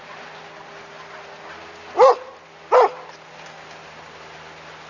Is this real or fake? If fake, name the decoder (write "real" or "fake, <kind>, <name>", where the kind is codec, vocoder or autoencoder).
real